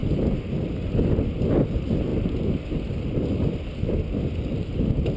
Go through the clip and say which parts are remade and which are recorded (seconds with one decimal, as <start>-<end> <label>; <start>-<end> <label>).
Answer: 0.0-5.2 recorded